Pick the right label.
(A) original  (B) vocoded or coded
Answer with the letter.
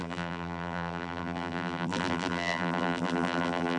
B